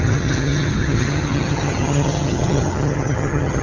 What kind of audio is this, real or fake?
fake